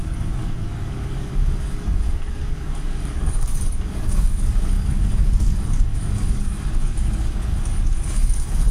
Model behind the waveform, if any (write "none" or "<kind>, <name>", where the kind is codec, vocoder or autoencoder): codec, DAC